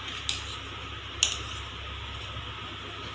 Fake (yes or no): no